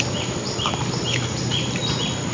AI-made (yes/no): no